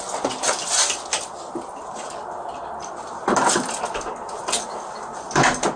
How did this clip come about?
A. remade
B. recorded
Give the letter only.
B